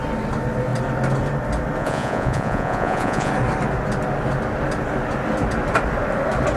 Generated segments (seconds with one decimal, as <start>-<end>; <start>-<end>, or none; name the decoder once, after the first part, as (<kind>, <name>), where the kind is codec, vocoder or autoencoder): 1.8-3.3 (vocoder, Vocos)